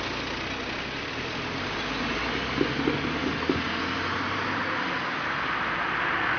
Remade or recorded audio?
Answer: recorded